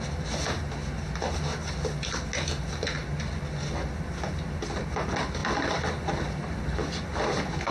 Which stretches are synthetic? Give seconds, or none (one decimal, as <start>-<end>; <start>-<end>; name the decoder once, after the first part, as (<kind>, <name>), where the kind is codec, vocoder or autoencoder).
none